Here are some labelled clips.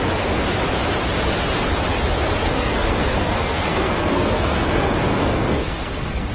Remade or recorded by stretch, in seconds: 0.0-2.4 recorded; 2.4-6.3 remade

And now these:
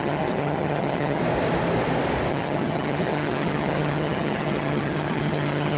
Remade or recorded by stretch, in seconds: 0.0-1.2 remade; 1.2-2.3 recorded; 2.3-5.8 remade